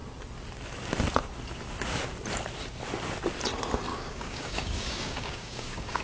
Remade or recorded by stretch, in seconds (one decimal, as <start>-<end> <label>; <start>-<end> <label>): 0.0-3.9 recorded; 3.9-6.0 remade